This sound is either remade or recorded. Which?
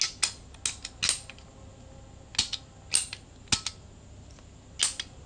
recorded